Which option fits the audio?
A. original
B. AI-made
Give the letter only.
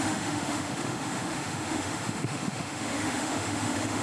B